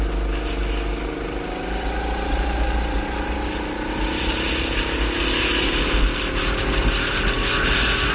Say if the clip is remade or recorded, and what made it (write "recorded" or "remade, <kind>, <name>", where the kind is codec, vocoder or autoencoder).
recorded